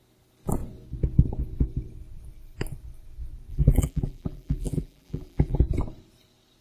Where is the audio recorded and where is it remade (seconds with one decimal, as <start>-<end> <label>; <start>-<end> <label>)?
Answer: 0.0-3.5 recorded; 3.5-5.6 remade; 5.6-6.6 recorded